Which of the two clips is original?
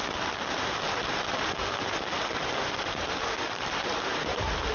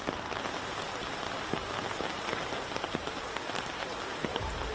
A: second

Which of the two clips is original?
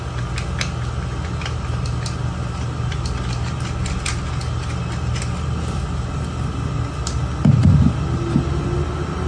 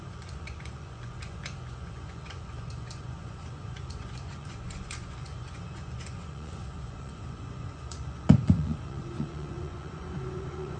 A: first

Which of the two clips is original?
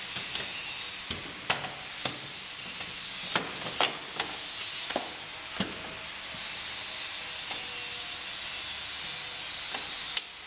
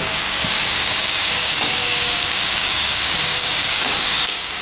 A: first